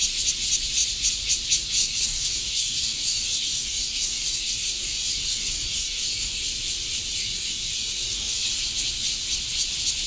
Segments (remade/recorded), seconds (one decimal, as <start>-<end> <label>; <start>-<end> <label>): 0.0-1.8 recorded; 1.8-6.4 remade; 6.4-7.2 recorded; 7.2-8.5 remade; 8.5-10.1 recorded